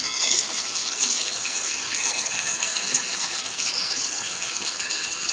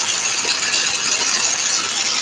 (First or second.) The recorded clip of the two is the second